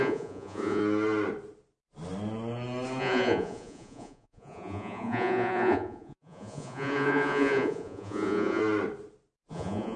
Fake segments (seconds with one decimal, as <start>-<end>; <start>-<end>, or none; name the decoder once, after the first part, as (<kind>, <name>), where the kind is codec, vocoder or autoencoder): 0.0-0.8 (vocoder, Vocos); 3.0-8.6; 9.5-10.0